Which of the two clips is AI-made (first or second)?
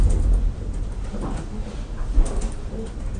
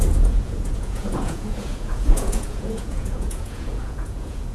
second